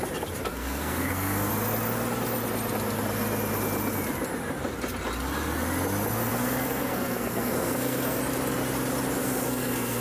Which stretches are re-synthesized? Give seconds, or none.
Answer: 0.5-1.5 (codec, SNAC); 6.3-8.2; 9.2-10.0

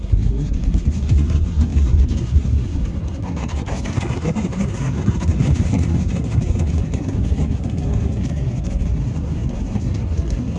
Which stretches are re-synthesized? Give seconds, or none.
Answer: 0.0-10.6 (codec, SNAC)

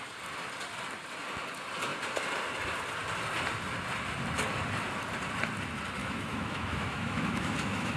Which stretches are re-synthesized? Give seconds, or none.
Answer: 6.0-8.0 (autoencoder, DAC-VAE)

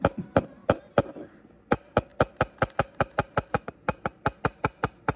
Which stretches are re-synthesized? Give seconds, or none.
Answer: 0.6-1.7 (vocoder, BigVGAN v2); 2.1-3.6

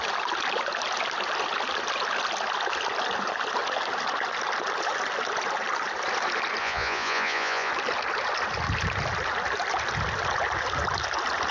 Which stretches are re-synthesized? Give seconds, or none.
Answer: 6.6-7.7 (vocoder, Vocos)